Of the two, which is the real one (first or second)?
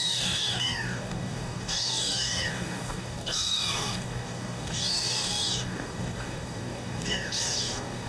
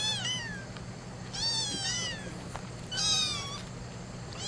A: second